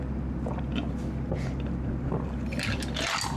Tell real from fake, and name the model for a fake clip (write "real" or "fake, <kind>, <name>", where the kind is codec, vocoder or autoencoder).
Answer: real